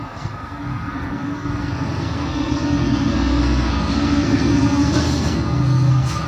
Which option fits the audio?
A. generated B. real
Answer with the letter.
A